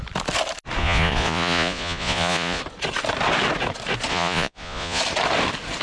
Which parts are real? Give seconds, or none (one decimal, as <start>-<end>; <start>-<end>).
0.0-0.8; 2.6-4.1; 5.0-5.8